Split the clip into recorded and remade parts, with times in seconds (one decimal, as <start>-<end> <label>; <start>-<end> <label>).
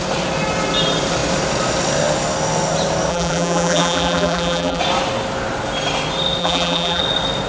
0.0-3.1 recorded; 3.1-4.8 remade; 4.8-6.4 recorded; 6.4-7.0 remade; 7.0-7.5 recorded